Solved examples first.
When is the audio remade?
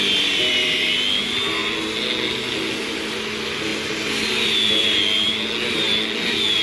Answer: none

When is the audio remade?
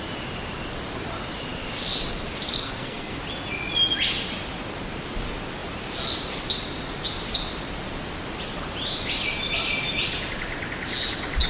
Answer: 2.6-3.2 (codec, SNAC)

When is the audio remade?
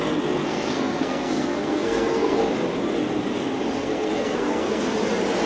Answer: 0.4-2.4 (codec, SNAC); 3.8-4.8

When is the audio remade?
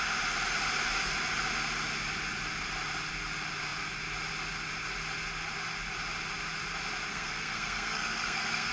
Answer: 7.1-8.7 (codec, SNAC)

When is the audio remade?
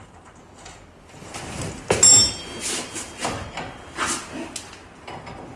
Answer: none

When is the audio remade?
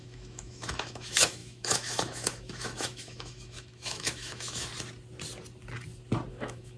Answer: 0.0-4.7 (autoencoder, DAC-VAE); 6.3-6.8